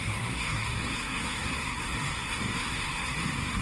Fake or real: fake